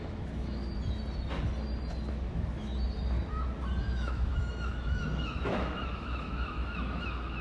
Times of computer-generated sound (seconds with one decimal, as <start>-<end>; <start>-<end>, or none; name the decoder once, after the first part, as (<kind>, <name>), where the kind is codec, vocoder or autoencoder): 0.0-0.6 (autoencoder, DAC-VAE); 2.1-2.7; 3.8-7.4